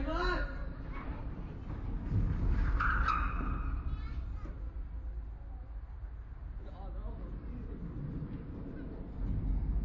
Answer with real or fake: real